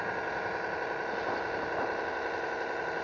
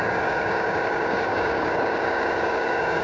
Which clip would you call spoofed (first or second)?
second